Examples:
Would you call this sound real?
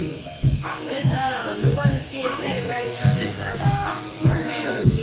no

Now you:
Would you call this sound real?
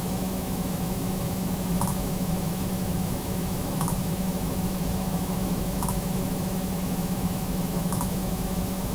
no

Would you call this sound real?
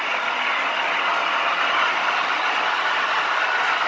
yes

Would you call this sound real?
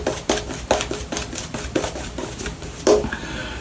yes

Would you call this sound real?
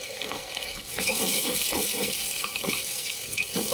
no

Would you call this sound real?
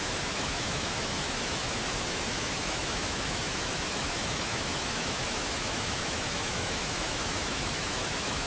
no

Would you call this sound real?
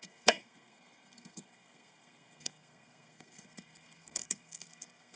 no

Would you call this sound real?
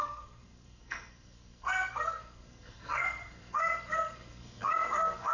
no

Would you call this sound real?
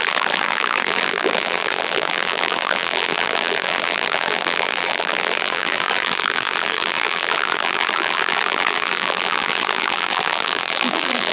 no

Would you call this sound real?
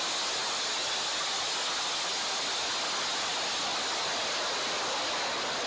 yes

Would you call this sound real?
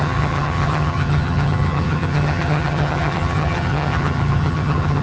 no